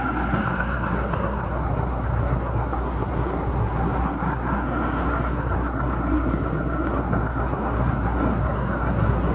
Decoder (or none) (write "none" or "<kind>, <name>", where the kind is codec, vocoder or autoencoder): codec, SNAC